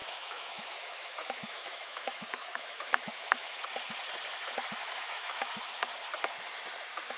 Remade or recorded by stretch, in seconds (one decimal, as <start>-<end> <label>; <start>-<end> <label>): 0.0-3.5 remade; 3.5-4.8 recorded; 4.8-5.4 remade; 5.4-7.2 recorded